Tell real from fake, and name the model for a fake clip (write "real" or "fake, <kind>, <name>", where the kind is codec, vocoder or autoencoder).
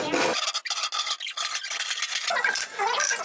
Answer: real